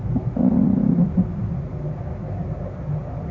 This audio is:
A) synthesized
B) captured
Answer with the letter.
B